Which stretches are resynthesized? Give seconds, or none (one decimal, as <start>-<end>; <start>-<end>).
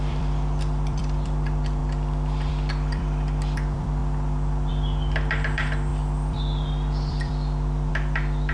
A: 0.0-1.8; 2.5-4.0; 4.7-8.5